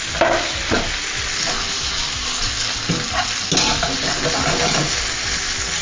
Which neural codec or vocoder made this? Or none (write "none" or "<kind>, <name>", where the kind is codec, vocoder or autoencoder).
none